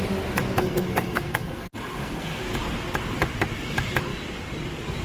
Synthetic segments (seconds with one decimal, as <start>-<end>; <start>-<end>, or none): 0.6-2.4

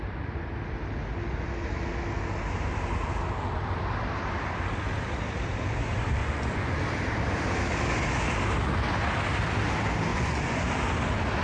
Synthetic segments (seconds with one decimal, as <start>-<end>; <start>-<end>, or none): 6.2-6.8; 10.1-10.7

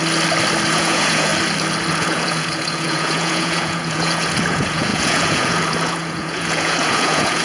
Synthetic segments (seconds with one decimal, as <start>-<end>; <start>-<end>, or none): 0.7-1.3; 1.9-7.4

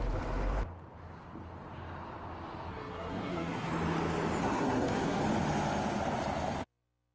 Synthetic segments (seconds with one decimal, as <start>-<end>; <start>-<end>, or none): 2.7-3.7; 4.4-5.2